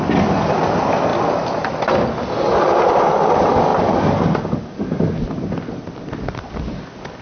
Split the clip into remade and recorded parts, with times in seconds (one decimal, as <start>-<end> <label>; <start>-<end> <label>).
0.0-1.1 remade; 1.1-2.9 recorded; 2.9-7.2 remade